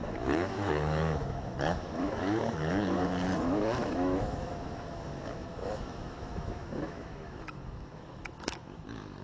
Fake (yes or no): yes